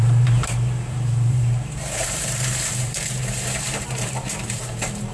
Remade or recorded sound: remade